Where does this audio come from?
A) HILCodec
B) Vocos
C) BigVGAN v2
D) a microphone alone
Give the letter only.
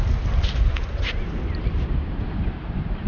D